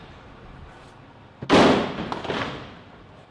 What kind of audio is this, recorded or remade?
recorded